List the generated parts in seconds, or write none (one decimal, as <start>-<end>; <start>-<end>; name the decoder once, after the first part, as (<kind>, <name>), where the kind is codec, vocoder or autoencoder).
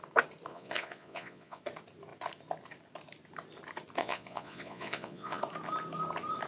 0.5-1.6 (vocoder, Vocos); 4.0-5.4